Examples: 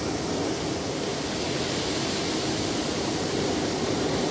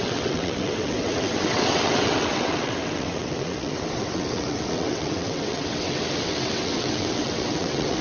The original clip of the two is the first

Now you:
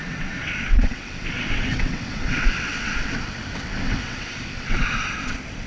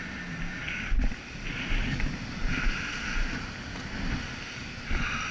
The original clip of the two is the second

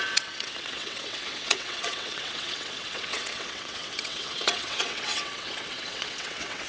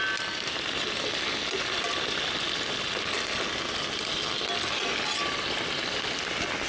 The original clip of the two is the second